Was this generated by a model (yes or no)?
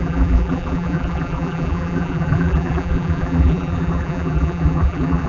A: yes